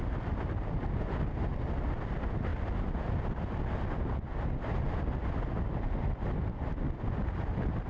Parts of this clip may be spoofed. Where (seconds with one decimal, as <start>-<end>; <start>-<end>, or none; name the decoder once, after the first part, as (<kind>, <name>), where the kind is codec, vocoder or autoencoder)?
none